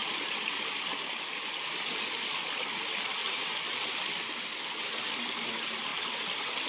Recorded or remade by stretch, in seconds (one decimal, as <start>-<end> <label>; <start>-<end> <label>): 0.0-6.7 recorded